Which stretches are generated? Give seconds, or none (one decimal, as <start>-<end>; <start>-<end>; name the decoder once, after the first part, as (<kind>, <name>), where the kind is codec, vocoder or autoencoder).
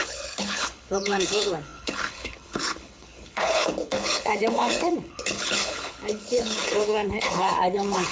0.0-8.1 (codec, HILCodec)